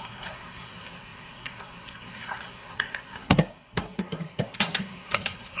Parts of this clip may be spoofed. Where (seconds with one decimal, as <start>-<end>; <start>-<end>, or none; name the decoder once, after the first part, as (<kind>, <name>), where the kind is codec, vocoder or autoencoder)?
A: 0.0-5.6 (codec, SNAC)